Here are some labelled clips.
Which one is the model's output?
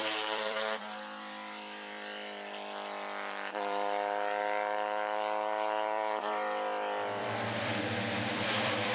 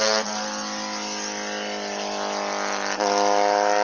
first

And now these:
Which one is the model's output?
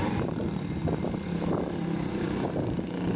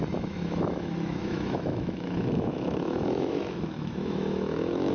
second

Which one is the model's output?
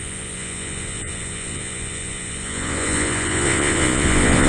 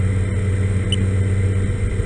first